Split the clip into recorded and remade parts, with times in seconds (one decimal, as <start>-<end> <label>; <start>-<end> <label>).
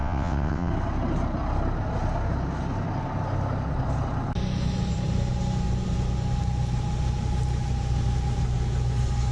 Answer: 0.0-0.7 remade; 0.7-9.3 recorded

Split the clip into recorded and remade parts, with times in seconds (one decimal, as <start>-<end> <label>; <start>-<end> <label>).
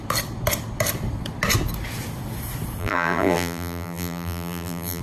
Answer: 0.0-2.8 recorded; 2.8-5.0 remade